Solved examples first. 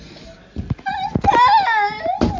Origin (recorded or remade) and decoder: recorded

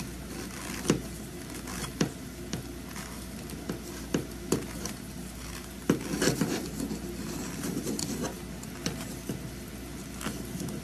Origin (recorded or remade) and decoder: recorded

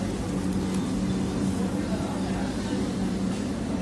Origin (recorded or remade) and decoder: recorded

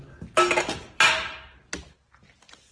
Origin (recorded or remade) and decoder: recorded